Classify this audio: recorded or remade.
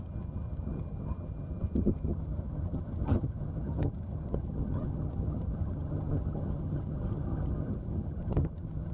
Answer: remade